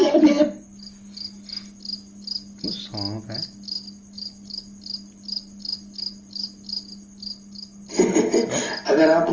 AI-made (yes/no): no